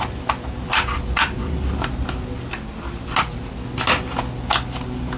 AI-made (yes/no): no